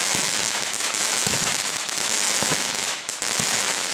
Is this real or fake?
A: fake